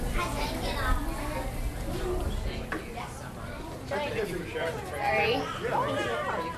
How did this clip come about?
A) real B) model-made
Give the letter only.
A